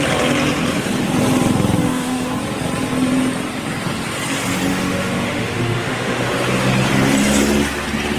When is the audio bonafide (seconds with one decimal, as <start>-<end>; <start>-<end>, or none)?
0.0-1.8; 2.3-4.7; 6.3-8.2